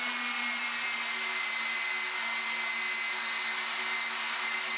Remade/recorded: recorded